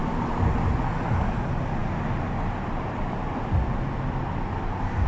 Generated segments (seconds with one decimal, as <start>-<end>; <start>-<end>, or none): none